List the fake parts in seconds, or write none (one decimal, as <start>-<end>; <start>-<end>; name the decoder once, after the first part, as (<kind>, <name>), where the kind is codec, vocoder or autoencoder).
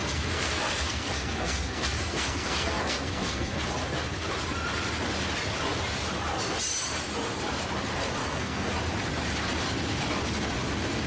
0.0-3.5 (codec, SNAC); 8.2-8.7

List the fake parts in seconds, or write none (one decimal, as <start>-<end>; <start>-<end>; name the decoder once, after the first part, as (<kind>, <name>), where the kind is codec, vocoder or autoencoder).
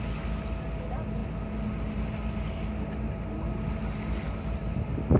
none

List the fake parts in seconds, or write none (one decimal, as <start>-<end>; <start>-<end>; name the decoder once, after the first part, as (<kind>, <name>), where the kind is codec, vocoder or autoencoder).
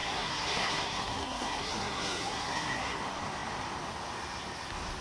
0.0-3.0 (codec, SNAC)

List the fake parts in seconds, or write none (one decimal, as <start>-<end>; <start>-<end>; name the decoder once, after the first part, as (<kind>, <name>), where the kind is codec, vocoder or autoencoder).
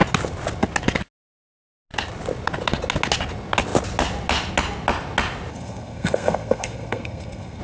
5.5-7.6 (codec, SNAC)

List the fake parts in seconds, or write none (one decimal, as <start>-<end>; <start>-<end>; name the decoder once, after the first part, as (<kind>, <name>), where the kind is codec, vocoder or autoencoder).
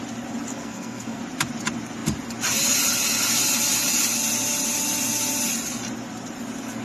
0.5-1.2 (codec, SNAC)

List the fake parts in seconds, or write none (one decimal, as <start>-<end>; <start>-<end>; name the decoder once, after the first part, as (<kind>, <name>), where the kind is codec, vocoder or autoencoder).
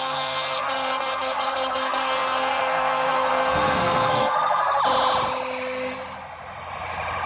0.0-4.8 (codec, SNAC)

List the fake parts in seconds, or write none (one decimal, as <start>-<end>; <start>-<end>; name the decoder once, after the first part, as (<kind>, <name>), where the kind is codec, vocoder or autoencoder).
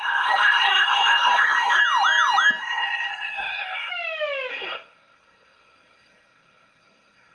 0.0-1.8 (codec, SNAC); 2.6-3.9; 4.5-7.3